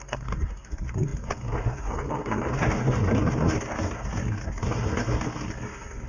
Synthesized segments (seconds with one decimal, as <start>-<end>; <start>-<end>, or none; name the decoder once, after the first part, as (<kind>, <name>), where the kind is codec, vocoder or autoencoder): 0.0-6.1 (codec, SNAC)